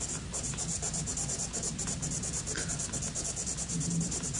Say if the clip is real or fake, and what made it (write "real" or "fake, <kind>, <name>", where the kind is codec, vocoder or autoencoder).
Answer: real